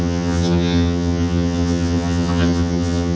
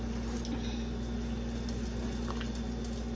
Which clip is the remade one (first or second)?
first